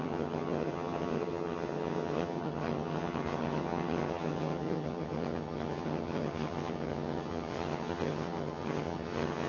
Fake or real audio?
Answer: fake